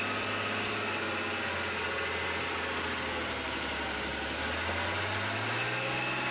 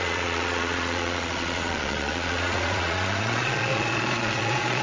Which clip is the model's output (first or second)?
second